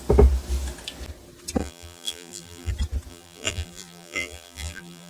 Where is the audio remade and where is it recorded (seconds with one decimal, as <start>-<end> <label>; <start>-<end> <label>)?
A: 0.0-1.6 recorded; 1.6-2.7 remade; 2.7-3.1 recorded; 3.1-5.1 remade